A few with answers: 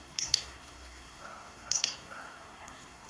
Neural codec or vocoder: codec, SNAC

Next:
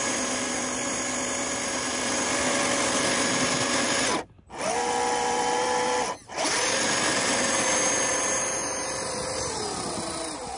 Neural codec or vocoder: none